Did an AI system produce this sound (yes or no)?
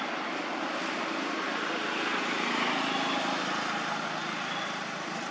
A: no